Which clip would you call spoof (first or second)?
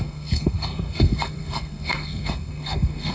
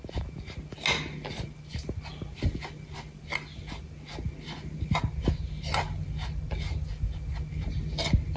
first